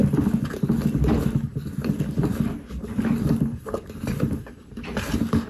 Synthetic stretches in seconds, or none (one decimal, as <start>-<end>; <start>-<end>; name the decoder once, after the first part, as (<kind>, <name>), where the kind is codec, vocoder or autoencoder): 1.5-4.8 (vocoder, BigVGAN v2)